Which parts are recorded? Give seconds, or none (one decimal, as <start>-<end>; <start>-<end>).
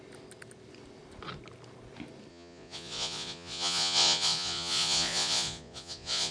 0.0-2.3